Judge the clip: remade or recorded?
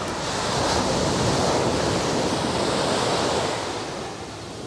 recorded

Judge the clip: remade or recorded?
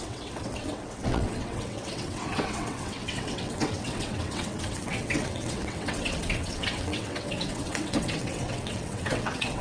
remade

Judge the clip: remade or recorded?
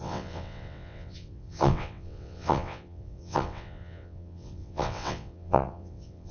remade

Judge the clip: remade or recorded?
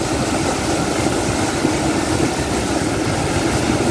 recorded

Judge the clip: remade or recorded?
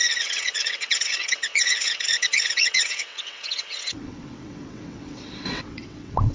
remade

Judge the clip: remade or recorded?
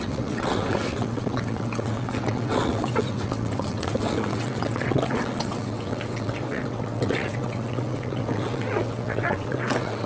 remade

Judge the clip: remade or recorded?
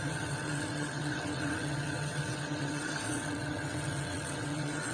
remade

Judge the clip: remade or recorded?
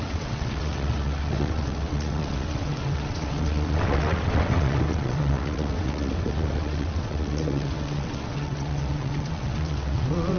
remade